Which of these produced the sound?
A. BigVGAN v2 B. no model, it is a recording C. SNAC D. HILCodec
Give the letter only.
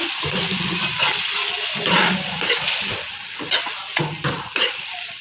B